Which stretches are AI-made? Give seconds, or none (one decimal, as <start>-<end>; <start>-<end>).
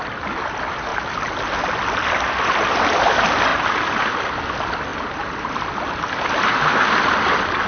none